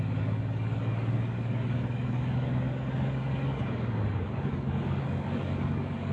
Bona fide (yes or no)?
no